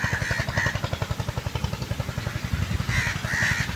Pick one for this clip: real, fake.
real